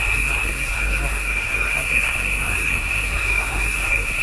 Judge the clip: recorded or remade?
remade